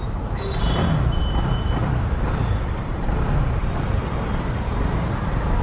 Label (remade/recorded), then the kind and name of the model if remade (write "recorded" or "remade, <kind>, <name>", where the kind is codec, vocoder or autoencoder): remade, vocoder, BigVGAN v2